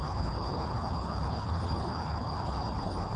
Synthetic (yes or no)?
yes